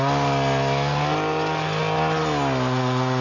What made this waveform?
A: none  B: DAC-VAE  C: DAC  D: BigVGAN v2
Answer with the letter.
A